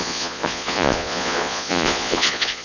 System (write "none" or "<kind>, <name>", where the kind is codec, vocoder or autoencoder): vocoder, Vocos